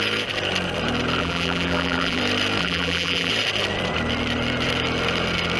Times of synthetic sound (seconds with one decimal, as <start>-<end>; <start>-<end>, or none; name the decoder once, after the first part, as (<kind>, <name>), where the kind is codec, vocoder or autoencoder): 1.2-2.2 (vocoder, BigVGAN v2); 2.6-3.3